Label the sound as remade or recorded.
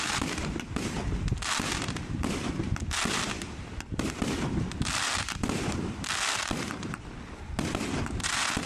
recorded